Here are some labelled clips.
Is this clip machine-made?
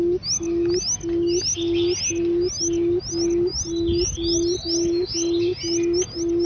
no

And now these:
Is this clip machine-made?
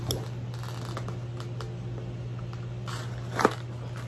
no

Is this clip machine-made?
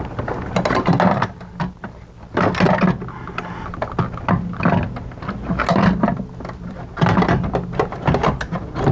no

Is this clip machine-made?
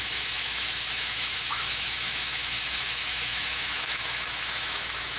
yes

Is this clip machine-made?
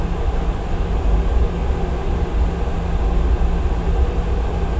no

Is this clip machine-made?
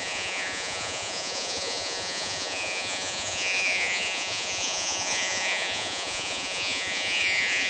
yes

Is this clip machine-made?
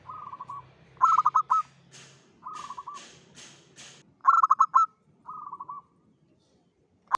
no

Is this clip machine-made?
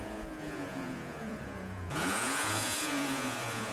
yes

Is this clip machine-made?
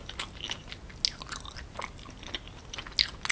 no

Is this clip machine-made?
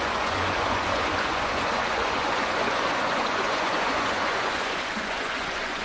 yes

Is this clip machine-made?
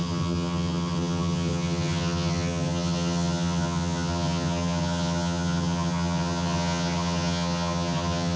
yes